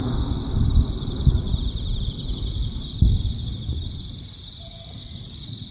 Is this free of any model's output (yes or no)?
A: yes